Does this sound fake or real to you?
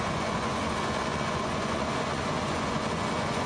fake